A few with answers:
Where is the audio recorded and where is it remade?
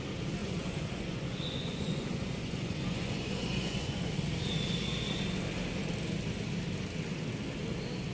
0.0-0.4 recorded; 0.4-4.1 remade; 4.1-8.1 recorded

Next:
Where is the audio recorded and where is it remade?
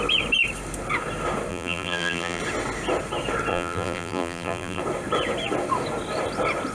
0.0-1.5 recorded; 1.5-2.4 remade; 2.4-3.5 recorded; 3.5-4.8 remade; 4.8-6.7 recorded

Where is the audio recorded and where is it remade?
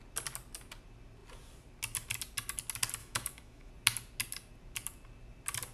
0.0-3.0 recorded; 3.0-3.7 remade; 3.7-5.7 recorded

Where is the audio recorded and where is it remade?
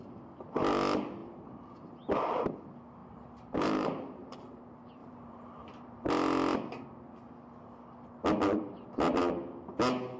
0.0-1.2 recorded; 1.2-1.9 remade; 1.9-3.0 recorded; 3.0-4.6 remade; 4.6-5.0 recorded; 5.0-6.1 remade; 6.1-10.2 recorded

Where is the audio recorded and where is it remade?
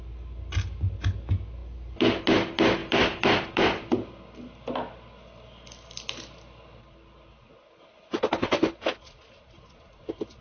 0.0-2.8 recorded; 2.8-3.5 remade; 3.5-10.4 recorded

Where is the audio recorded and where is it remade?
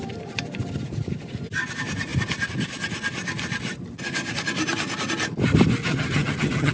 0.0-5.8 recorded; 5.8-6.7 remade